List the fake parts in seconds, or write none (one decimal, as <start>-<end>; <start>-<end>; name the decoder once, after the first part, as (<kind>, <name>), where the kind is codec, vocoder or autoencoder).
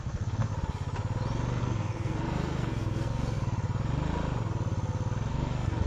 0.0-0.5 (codec, SNAC); 1.6-3.4; 5.3-5.9